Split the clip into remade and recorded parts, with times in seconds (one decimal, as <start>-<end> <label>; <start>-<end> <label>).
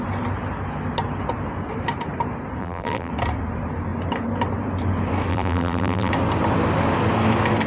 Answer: 0.0-2.6 recorded; 2.6-3.1 remade; 3.1-5.3 recorded; 5.3-6.1 remade; 6.1-7.7 recorded